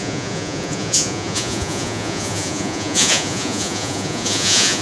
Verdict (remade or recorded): remade